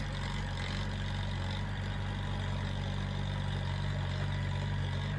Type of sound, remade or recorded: recorded